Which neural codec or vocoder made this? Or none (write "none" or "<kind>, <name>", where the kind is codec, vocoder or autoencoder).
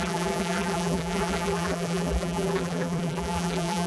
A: vocoder, BigVGAN v2